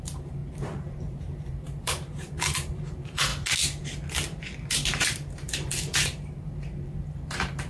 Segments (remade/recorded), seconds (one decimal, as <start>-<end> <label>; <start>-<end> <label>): 0.0-0.4 remade; 0.4-1.0 recorded; 1.0-3.3 remade; 3.3-4.7 recorded; 4.7-7.7 remade